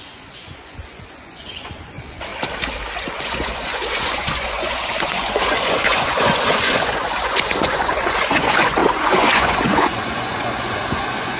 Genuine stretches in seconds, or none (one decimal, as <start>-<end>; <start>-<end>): 2.3-3.1